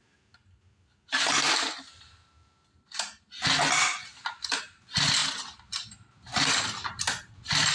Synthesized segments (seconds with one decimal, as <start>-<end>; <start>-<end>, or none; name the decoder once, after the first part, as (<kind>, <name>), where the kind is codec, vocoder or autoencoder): none